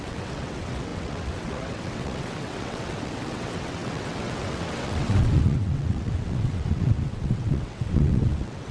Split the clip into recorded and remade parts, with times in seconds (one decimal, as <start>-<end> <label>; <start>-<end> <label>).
0.0-8.7 remade